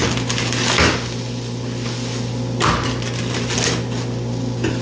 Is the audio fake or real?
real